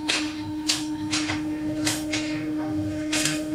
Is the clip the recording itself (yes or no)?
no